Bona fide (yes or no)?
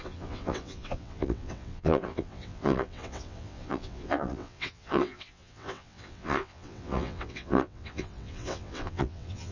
no